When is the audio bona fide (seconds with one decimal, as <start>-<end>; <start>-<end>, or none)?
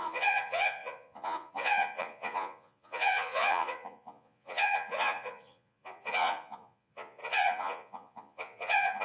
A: none